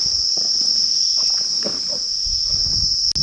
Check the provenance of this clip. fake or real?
real